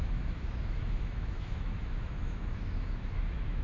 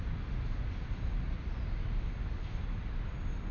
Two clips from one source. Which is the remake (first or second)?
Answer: first